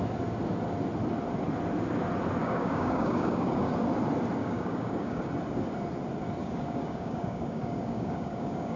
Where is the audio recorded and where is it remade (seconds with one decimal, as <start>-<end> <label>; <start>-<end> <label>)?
0.0-2.4 recorded; 2.4-3.7 remade; 3.7-4.4 recorded; 4.4-5.3 remade; 5.3-6.4 recorded; 6.4-8.8 remade